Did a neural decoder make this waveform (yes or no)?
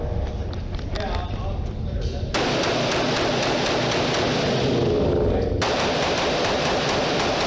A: no